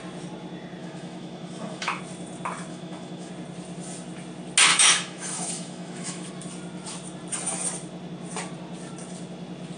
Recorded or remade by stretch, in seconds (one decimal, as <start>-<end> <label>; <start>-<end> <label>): 0.0-0.8 recorded; 0.8-2.0 remade; 2.0-2.7 recorded; 2.7-3.3 remade; 3.3-4.7 recorded; 4.7-6.3 remade; 6.3-9.8 recorded